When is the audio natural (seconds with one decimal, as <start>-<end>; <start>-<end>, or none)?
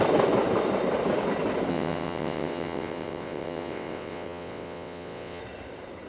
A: 0.0-1.7; 5.4-6.1